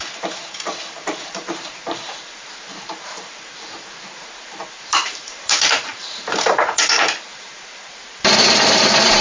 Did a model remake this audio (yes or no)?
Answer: yes